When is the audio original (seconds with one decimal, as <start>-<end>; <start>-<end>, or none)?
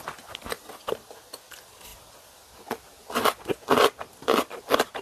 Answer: 0.0-5.0